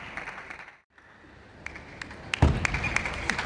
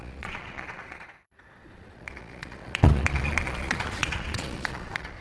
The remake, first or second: second